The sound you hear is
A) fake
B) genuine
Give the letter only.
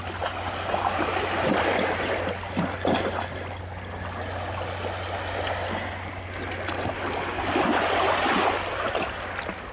B